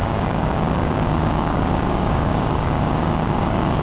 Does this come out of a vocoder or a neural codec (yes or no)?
yes